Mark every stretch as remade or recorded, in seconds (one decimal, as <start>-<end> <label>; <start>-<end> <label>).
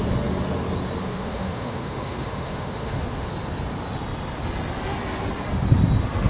0.0-1.0 recorded; 1.0-3.3 remade; 3.3-6.3 recorded